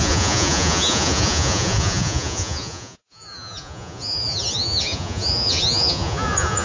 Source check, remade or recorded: remade